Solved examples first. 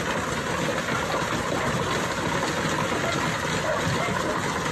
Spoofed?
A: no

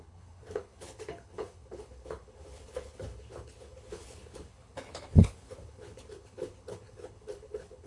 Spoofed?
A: yes